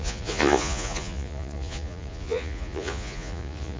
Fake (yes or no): yes